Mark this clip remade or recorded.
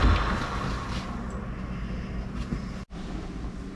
recorded